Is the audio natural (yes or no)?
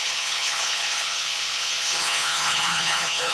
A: no